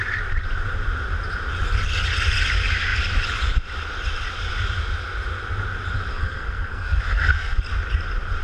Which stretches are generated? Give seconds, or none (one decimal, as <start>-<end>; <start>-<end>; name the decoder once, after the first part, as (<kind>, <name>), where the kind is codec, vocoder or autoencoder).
6.1-7.6 (codec, SNAC)